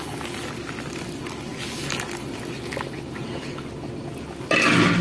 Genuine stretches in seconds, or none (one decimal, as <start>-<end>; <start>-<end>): 0.0-5.0